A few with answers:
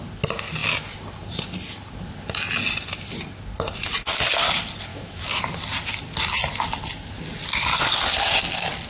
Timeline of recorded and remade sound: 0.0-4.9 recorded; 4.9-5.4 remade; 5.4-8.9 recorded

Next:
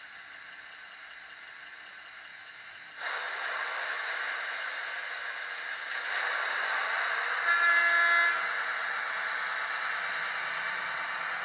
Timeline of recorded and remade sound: 0.0-2.3 recorded; 2.3-2.9 remade; 2.9-11.4 recorded

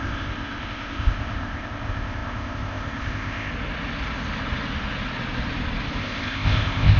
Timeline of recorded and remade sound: 0.0-3.5 remade; 3.5-6.0 recorded; 6.0-7.0 remade

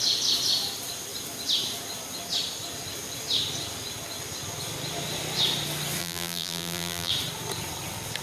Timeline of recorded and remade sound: 0.0-6.0 recorded; 6.0-7.1 remade; 7.1-8.2 recorded

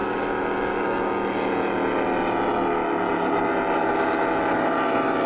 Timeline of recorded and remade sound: 0.0-5.3 recorded